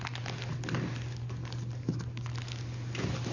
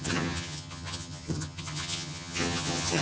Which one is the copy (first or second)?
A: second